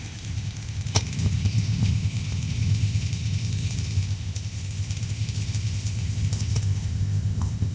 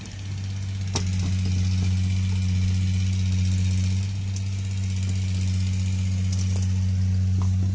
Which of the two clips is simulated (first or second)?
first